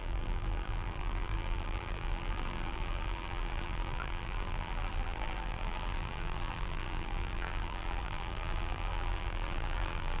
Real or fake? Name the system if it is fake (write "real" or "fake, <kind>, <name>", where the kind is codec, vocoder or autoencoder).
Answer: fake, vocoder, BigVGAN v2